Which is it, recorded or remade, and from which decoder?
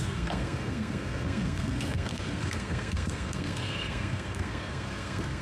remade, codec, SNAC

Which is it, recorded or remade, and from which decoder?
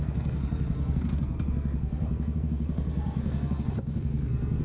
remade, codec, SNAC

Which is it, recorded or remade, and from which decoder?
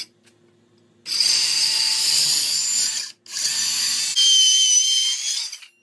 recorded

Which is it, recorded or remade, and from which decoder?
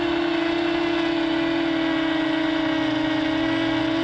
recorded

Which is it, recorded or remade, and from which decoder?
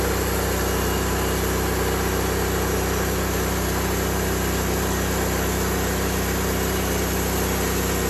recorded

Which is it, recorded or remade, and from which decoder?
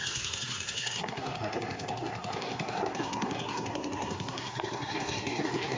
remade, codec, SNAC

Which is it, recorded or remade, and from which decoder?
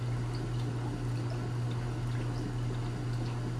recorded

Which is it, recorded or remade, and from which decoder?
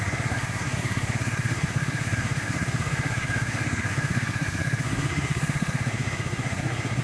remade, codec, SNAC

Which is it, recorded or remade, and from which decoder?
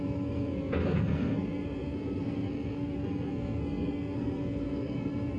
remade, codec, SNAC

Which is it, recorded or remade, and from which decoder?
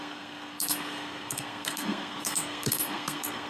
remade, codec, SNAC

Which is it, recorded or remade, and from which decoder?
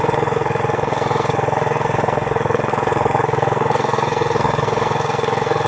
remade, codec, SNAC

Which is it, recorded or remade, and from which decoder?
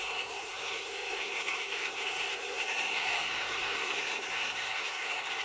remade, codec, SNAC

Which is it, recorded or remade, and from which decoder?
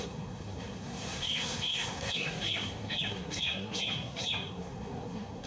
remade, codec, SNAC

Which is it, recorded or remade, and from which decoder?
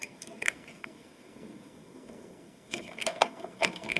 remade, codec, SNAC